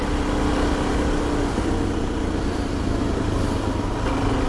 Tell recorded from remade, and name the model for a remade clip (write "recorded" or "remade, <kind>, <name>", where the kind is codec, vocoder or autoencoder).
recorded